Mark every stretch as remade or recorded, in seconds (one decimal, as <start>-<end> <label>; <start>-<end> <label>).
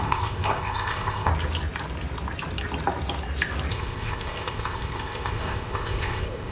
0.0-1.3 remade; 1.3-3.7 recorded; 3.7-6.5 remade